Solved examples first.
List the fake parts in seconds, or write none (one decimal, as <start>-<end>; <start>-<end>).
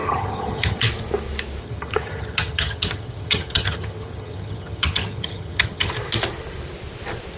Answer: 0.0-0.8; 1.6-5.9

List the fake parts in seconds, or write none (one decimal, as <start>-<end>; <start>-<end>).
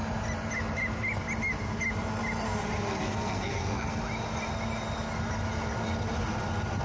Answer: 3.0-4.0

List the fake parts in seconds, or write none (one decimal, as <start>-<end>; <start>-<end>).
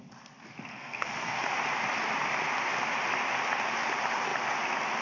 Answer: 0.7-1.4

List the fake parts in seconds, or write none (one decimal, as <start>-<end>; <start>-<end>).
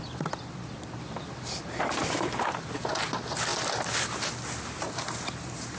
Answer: 0.0-5.8